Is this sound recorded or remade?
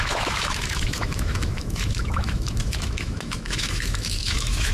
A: remade